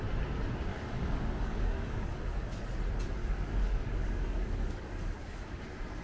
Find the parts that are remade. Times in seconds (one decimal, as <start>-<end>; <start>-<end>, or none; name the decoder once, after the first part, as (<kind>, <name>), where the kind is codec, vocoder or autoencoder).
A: 0.7-2.6 (codec, DAC); 3.2-5.6